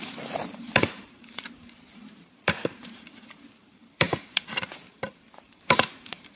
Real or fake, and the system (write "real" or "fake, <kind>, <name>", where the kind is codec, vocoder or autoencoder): fake, vocoder, BigVGAN v2